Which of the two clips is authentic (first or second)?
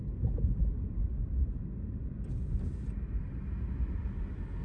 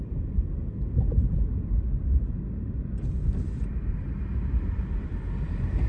first